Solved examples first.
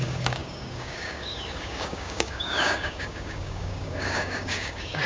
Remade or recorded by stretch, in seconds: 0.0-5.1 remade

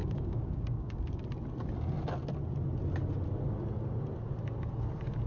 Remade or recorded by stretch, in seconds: 0.0-1.2 remade; 1.2-5.3 recorded

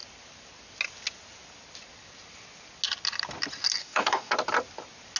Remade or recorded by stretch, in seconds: 0.0-3.8 recorded; 3.8-4.3 remade; 4.3-5.2 recorded

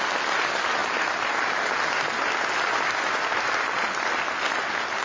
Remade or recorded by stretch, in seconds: 0.0-5.0 recorded

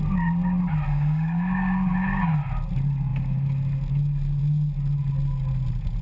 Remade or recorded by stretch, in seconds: 0.0-0.9 recorded; 0.9-1.9 remade; 1.9-6.0 recorded

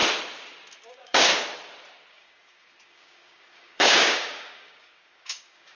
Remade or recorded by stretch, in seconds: 0.0-0.9 recorded; 0.9-1.3 remade; 1.3-2.1 recorded; 2.1-5.7 remade

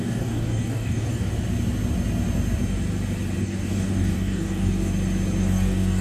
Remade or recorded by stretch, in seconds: 0.0-1.3 remade; 1.3-3.4 recorded; 3.4-4.9 remade; 4.9-5.4 recorded; 5.4-6.0 remade